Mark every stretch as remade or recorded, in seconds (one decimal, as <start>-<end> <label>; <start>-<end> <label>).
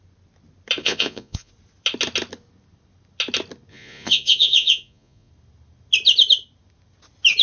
0.0-0.8 recorded; 0.8-1.5 remade; 1.5-3.7 recorded; 3.7-5.3 remade; 5.3-7.4 recorded